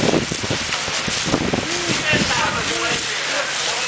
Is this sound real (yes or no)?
yes